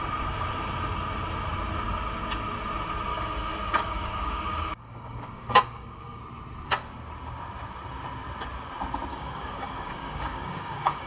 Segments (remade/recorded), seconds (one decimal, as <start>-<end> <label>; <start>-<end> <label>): 0.0-3.1 recorded; 3.1-6.2 remade; 6.2-9.1 recorded; 9.1-11.1 remade